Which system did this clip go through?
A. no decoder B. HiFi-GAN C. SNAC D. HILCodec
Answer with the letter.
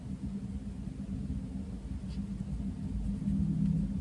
A